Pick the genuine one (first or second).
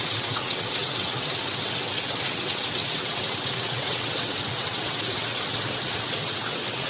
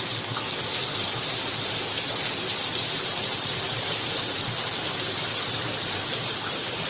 second